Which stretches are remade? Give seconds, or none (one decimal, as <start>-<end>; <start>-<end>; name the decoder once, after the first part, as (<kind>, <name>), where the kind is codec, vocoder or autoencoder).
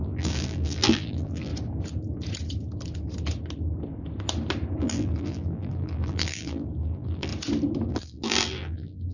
0.0-1.5 (vocoder, BigVGAN v2); 4.8-7.3; 7.9-9.1